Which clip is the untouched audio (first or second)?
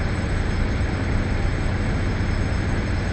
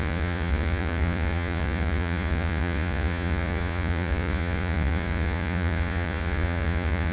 first